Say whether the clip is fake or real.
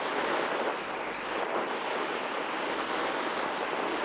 real